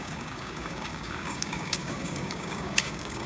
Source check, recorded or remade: remade